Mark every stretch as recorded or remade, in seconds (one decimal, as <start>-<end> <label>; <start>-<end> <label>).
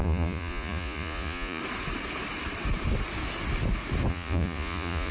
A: 0.0-1.6 remade; 1.6-4.1 recorded; 4.1-5.1 remade